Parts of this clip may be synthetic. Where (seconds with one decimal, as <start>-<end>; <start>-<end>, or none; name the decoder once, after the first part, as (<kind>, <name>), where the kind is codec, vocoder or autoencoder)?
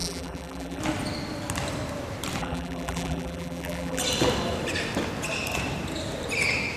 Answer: 0.0-0.8 (vocoder, BigVGAN v2); 2.4-4.0